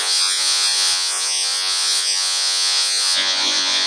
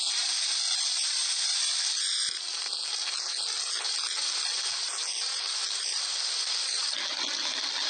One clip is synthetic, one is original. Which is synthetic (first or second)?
first